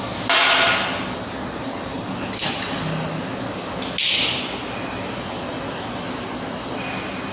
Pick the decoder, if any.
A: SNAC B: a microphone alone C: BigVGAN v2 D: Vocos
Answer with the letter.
B